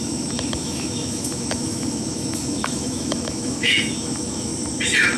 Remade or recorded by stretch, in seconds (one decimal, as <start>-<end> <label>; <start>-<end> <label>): 0.0-4.5 remade; 4.5-5.2 recorded